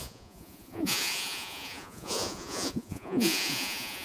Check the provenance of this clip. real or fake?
fake